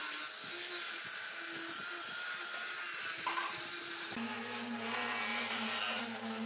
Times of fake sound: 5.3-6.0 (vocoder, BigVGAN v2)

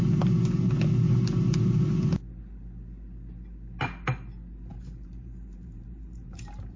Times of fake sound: 4.7-6.8 (vocoder, BigVGAN v2)

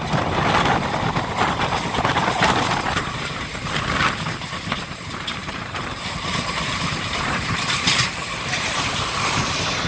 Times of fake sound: 2.1-3.5 (vocoder, BigVGAN v2); 5.4-9.9

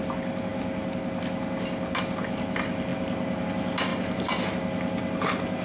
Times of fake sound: 3.9-4.5 (vocoder, BigVGAN v2)

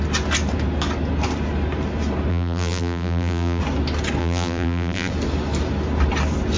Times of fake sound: 2.3-3.6 (vocoder, BigVGAN v2); 4.2-5.1